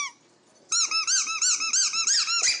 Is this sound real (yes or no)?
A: yes